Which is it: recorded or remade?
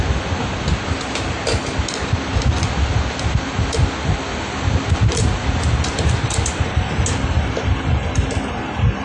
recorded